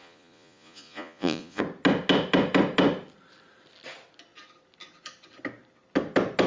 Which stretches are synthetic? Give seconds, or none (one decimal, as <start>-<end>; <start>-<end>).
0.0-1.6